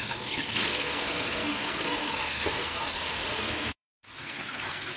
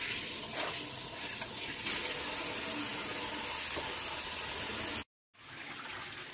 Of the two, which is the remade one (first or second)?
first